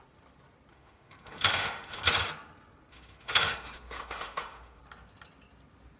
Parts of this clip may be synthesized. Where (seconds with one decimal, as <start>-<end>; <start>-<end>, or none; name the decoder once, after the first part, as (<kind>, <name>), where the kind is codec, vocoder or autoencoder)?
0.7-2.0 (autoencoder, DAC-VAE); 2.9-4.8